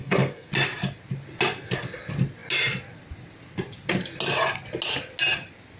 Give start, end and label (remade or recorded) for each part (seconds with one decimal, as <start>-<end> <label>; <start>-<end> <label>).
0.0-0.5 remade; 0.5-5.8 recorded